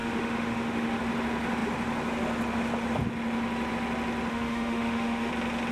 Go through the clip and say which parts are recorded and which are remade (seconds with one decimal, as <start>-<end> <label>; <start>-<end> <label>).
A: 0.0-1.0 remade; 1.0-4.3 recorded; 4.3-5.3 remade; 5.3-5.7 recorded